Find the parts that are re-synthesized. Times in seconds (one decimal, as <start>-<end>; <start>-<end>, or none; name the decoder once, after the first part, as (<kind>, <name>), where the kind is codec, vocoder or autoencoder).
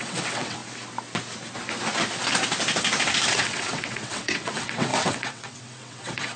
0.0-0.6 (vocoder, WaveNeXt); 3.3-6.4